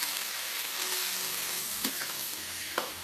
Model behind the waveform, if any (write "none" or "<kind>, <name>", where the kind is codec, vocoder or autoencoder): codec, DAC